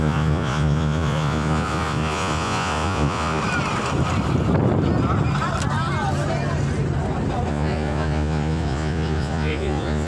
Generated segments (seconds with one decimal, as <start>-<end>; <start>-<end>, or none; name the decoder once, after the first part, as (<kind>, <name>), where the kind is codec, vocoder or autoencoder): 0.0-3.4 (vocoder, Vocos); 7.5-10.1